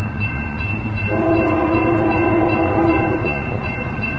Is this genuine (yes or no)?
no